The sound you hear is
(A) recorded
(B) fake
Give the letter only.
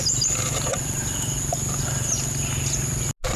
A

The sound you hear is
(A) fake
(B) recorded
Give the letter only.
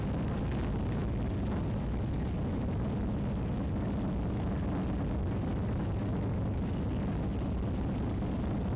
B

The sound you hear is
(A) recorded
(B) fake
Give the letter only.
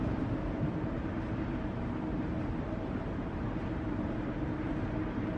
B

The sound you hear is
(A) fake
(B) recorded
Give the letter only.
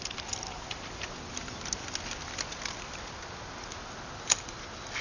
B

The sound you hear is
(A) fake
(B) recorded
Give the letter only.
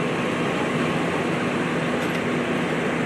B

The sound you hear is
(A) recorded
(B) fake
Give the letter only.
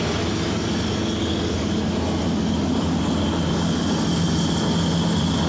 A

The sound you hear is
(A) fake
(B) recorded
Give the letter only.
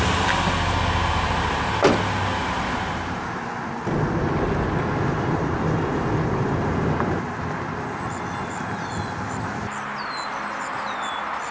B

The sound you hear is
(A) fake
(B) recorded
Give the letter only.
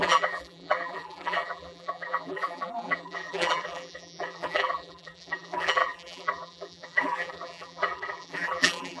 A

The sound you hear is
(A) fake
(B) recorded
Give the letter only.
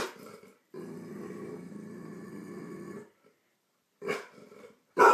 A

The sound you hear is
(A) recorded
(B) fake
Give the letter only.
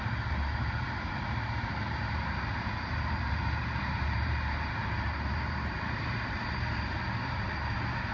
B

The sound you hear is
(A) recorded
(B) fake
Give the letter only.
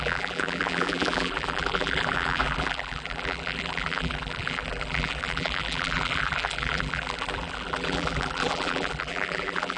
B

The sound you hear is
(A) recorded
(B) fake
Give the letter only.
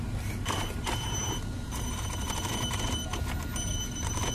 B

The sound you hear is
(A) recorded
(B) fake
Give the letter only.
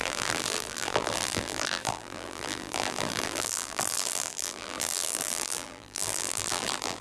B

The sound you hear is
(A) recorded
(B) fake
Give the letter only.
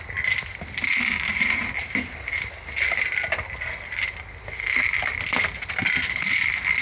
A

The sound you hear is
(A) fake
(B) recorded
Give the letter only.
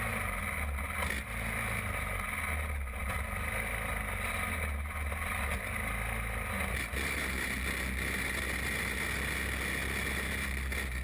B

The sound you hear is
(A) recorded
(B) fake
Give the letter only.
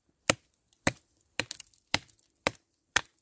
B